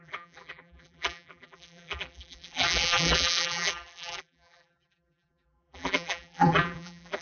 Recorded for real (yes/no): no